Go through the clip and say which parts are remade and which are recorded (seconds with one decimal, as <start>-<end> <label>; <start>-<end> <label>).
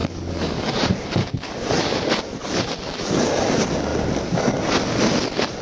0.0-0.7 remade; 0.7-1.2 recorded; 1.2-2.1 remade; 2.1-5.6 recorded